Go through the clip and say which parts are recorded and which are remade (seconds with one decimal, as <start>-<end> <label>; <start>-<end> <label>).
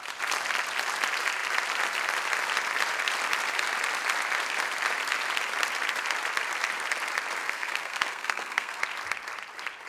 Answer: 0.0-7.4 recorded; 7.4-8.8 remade; 8.8-9.9 recorded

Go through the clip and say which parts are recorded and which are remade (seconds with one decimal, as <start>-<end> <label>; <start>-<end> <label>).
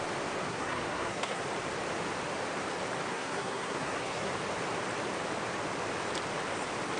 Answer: 0.0-0.5 recorded; 0.5-1.4 remade; 1.4-3.1 recorded; 3.1-4.3 remade; 4.3-7.0 recorded